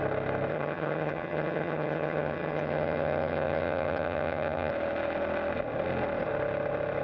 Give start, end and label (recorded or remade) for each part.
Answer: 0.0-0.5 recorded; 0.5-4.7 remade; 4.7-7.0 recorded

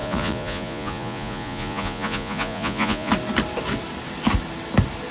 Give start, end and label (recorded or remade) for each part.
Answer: 0.0-3.1 remade; 3.1-5.1 recorded

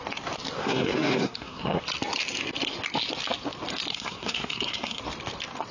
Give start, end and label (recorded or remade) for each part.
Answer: 0.0-0.6 recorded; 0.6-1.8 remade; 1.8-3.9 recorded; 3.9-5.0 remade; 5.0-5.7 recorded

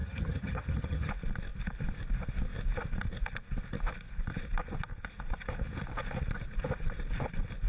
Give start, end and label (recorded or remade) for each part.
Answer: 0.0-1.1 remade; 1.1-7.7 recorded